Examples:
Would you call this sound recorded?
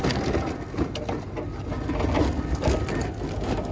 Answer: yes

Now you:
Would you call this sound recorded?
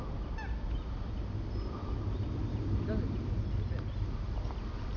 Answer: yes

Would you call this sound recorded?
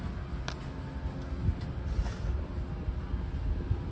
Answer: yes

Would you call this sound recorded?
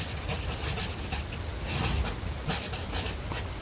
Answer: yes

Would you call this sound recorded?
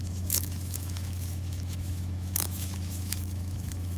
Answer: no